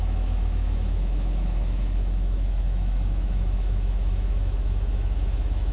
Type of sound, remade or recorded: remade